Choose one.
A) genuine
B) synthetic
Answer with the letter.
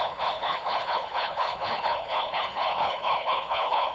B